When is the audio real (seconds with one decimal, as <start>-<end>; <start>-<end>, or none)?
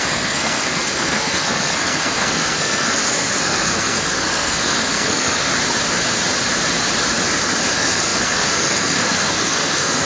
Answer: 5.5-7.7